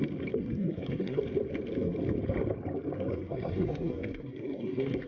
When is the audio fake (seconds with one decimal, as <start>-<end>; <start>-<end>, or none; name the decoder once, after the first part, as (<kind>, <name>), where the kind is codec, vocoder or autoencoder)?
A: 0.4-1.2 (codec, SNAC); 3.1-5.1